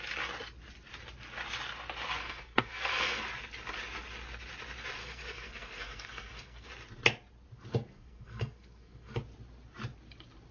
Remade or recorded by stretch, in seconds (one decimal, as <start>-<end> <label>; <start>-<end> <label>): 0.0-2.2 recorded; 2.2-3.2 remade; 3.2-5.0 recorded; 5.0-6.7 remade; 6.7-7.7 recorded; 7.7-9.2 remade; 9.2-10.5 recorded